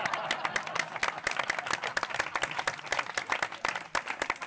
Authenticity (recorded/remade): recorded